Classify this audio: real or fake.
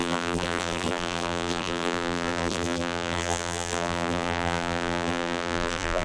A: fake